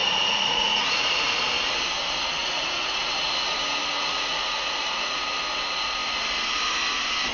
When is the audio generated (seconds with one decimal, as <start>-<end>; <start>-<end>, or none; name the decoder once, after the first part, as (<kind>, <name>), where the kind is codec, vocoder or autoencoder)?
0.0-1.4 (vocoder, Vocos); 2.4-3.1; 3.8-5.2